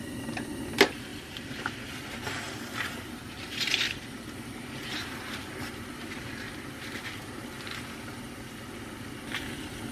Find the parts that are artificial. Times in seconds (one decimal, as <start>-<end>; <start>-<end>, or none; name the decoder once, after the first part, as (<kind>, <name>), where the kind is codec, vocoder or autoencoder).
1.1-6.3 (vocoder, BigVGAN v2)